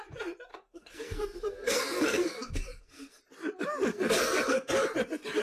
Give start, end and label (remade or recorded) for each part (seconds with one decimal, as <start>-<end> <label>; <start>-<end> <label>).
0.0-0.5 recorded; 0.5-3.2 remade; 3.2-3.9 recorded; 3.9-4.7 remade; 4.7-5.4 recorded